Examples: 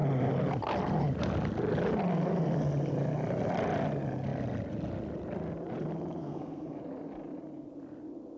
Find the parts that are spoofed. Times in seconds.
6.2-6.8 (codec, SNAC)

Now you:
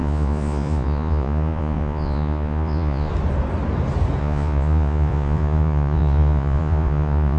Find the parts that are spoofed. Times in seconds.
0.0-3.1 (vocoder, Vocos); 4.2-7.4

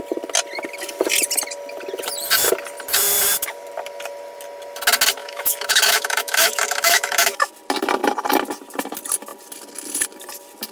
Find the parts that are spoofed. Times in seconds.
5.2-7.5 (autoencoder, DAC-VAE)

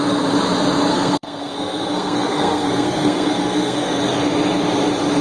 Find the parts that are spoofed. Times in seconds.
0.9-4.0 (codec, SNAC)

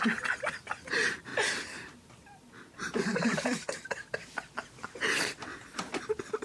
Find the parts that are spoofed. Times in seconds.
1.3-4.5 (vocoder, BigVGAN v2); 5.5-6.0

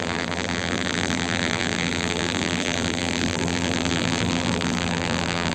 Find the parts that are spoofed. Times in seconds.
0.0-5.5 (vocoder, BigVGAN v2)

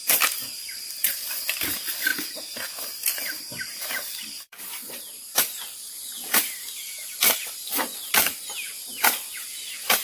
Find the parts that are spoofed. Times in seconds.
0.0-2.1 (vocoder, BigVGAN v2); 3.5-10.0

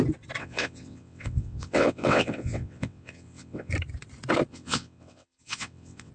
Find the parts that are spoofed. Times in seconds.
0.4-3.7 (vocoder, WaveNeXt); 4.5-6.1